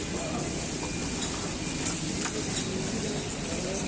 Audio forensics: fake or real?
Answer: real